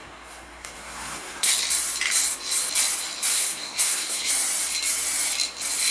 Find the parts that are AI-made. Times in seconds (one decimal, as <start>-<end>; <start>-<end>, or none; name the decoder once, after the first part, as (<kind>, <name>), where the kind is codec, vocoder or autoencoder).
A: 0.0-1.5 (codec, SNAC); 3.3-4.3